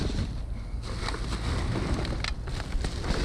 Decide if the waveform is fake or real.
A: real